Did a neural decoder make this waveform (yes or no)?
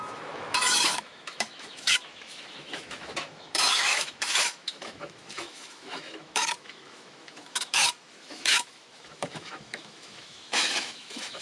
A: yes